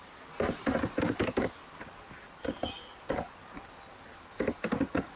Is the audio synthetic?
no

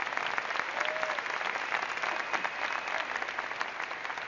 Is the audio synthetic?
no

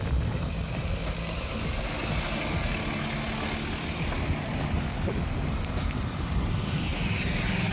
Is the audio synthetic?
no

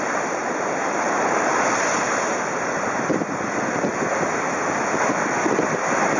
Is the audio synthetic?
no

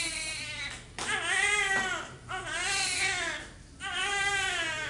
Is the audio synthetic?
no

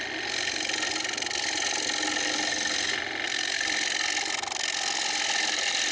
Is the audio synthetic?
no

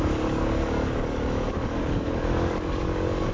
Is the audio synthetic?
yes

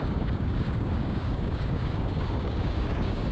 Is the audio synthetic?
yes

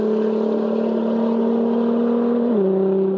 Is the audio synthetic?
no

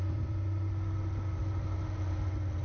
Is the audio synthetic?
no